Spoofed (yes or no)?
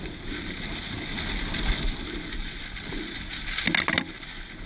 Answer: no